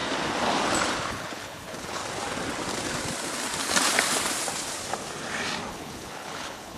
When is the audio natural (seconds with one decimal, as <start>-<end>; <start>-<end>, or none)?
0.0-1.1; 2.0-5.7